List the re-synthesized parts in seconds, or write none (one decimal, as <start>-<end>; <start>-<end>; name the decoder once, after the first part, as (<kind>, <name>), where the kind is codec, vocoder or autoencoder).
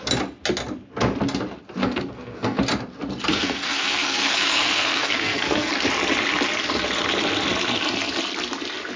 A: 1.8-2.6 (codec, SNAC); 3.3-5.7